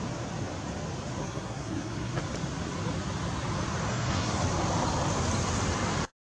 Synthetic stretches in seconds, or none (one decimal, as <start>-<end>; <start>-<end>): 1.2-2.2; 3.9-4.4

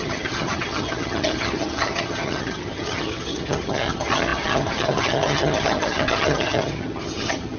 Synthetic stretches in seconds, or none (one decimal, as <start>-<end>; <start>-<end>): 0.0-7.6